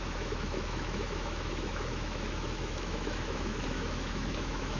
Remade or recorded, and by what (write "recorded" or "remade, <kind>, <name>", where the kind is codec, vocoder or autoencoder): remade, autoencoder, DAC-VAE